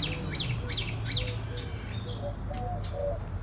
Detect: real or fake real